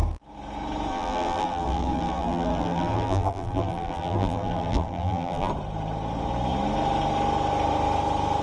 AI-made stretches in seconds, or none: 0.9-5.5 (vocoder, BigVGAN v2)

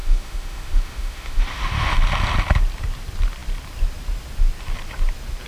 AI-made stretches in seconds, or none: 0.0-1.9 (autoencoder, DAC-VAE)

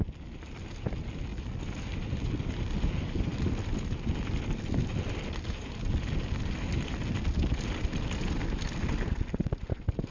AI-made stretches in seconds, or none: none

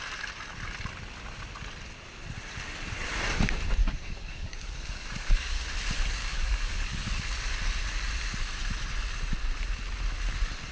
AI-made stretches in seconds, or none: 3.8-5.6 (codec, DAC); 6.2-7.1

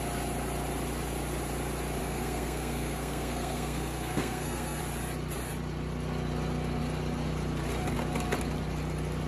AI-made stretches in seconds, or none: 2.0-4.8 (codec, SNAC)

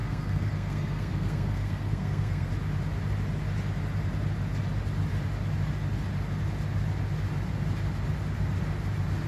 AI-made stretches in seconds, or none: 0.0-2.5 (codec, SNAC)

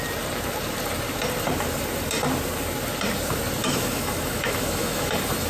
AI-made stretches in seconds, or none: 3.6-5.1 (autoencoder, DAC-VAE)

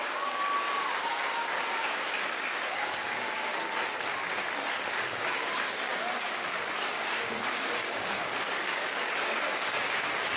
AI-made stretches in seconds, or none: 0.0-3.5 (codec, DAC); 4.9-10.4